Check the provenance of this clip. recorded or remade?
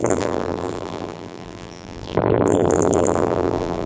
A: remade